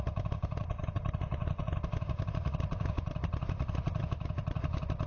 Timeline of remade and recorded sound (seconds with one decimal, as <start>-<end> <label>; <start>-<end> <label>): 0.0-5.1 recorded